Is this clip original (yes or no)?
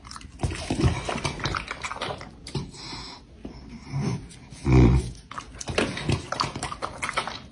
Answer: yes